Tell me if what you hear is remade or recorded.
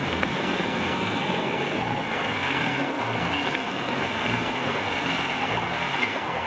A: remade